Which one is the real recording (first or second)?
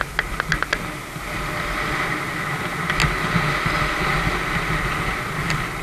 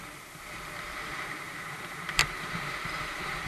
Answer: first